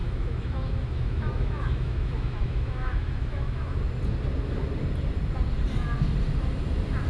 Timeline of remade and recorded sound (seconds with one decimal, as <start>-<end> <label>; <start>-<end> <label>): 0.0-3.8 remade; 3.8-7.1 recorded